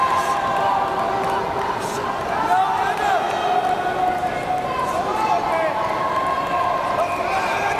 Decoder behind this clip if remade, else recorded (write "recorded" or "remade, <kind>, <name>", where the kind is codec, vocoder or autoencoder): recorded